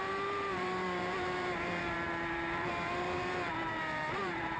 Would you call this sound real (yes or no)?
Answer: no